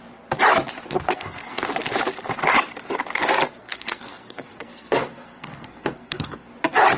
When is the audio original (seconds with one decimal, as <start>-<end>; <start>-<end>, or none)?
0.0-0.8; 1.7-3.6; 6.5-7.0